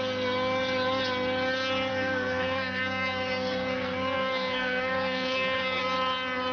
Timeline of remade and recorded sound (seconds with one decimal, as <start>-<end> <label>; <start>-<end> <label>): 0.0-1.9 recorded; 1.9-5.8 remade; 5.8-6.5 recorded